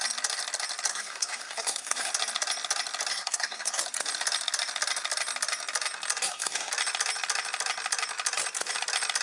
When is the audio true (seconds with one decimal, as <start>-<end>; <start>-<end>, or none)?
0.0-0.9; 2.1-3.1; 3.8-6.2; 6.7-9.2